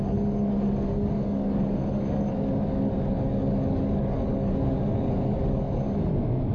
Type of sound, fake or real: fake